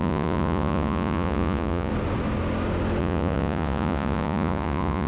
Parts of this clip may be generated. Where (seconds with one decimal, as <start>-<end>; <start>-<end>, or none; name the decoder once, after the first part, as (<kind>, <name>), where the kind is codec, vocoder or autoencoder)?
0.0-1.9 (vocoder, Vocos); 3.0-5.1

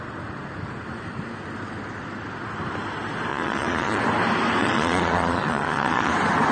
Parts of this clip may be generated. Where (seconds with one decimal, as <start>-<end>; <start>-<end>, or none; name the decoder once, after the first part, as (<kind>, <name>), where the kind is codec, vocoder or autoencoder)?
3.3-4.0 (vocoder, Vocos); 4.6-6.1

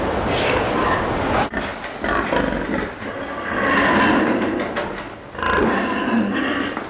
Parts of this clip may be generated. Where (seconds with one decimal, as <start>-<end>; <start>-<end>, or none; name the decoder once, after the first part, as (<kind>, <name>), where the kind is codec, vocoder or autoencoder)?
none

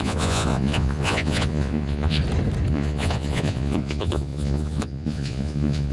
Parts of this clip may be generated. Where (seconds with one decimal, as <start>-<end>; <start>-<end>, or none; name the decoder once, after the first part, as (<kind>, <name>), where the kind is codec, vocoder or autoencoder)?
0.0-2.2 (vocoder, Vocos); 2.7-5.9

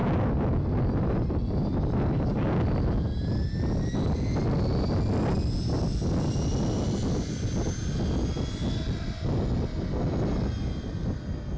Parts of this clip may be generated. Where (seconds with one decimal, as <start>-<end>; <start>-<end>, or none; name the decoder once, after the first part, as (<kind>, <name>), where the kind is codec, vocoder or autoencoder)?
none